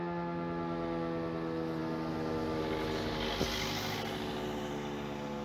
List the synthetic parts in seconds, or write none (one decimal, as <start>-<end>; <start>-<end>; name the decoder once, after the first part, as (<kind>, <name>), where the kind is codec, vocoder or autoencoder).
none